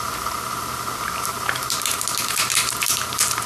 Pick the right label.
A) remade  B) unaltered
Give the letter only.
A